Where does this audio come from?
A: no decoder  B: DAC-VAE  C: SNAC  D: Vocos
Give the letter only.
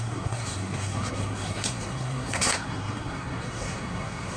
C